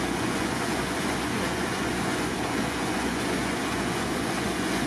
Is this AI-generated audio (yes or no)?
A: yes